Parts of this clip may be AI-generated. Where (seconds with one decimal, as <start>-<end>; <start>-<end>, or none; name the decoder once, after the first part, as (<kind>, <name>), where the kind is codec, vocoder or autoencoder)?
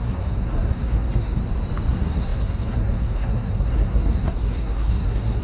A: 0.0-1.4 (codec, SNAC); 1.9-5.4